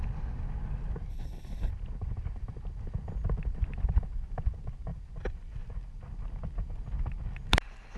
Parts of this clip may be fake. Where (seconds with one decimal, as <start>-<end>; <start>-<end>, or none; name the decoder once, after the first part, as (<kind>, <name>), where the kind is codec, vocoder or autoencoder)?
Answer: 1.1-1.7 (codec, HILCodec)

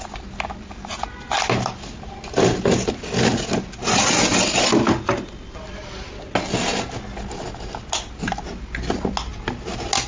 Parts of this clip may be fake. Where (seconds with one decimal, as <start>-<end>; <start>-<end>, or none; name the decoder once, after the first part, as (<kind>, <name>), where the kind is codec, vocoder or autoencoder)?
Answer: none

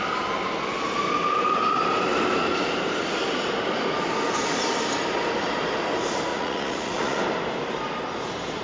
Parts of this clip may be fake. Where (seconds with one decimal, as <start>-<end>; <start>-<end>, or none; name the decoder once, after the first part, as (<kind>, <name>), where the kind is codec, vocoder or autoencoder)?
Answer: 6.3-7.2 (vocoder, Vocos)